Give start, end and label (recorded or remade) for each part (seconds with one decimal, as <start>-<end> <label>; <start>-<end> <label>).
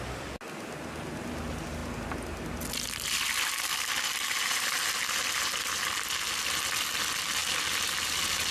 0.0-8.5 recorded